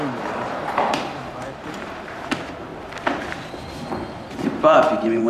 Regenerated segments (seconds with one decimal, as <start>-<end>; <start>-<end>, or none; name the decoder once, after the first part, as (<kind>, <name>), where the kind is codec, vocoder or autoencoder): 0.0-2.7 (vocoder, BigVGAN v2); 4.3-5.3